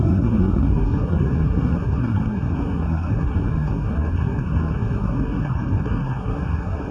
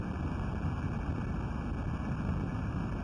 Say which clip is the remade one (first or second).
first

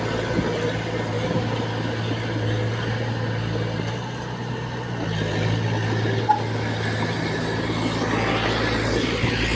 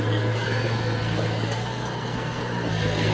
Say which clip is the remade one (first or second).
second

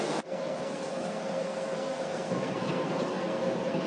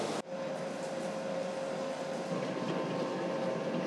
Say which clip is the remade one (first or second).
first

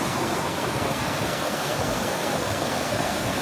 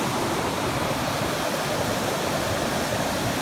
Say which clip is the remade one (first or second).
first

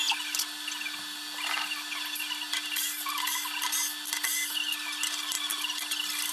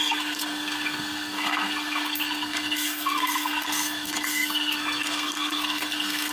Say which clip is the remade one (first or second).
second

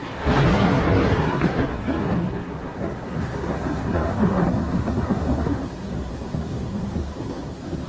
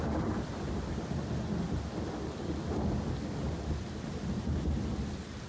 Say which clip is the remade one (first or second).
first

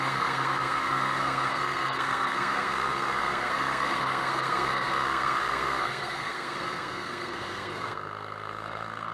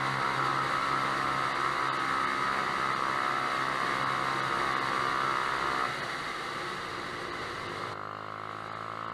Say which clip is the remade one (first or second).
first